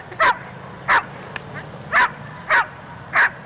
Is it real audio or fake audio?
real